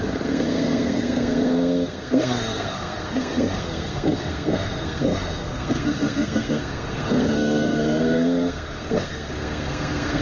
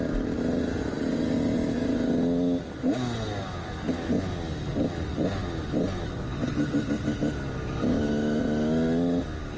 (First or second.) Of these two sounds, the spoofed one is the first